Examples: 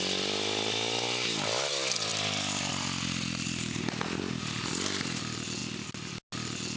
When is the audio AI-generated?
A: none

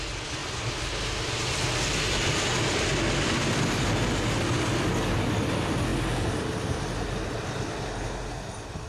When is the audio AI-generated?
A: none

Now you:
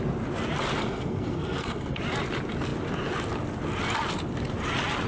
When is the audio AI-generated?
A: 0.8-2.0 (codec, SNAC)